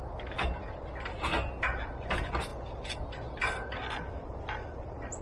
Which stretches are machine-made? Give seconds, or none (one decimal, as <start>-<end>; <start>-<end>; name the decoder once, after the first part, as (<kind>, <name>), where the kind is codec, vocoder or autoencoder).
none